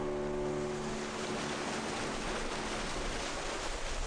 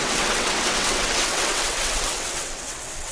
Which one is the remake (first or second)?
second